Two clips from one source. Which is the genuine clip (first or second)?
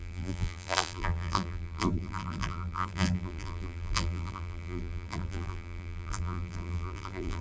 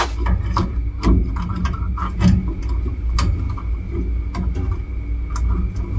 second